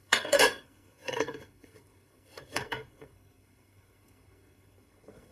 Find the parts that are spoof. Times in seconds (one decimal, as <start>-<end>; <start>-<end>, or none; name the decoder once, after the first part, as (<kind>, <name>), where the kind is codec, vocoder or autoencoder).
0.0-5.3 (codec, SNAC)